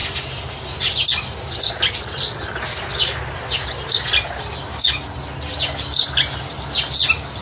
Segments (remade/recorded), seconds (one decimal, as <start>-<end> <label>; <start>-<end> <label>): 0.0-7.4 recorded